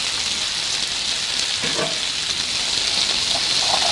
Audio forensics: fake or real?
real